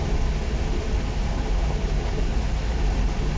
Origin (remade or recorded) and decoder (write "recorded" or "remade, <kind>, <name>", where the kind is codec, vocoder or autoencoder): recorded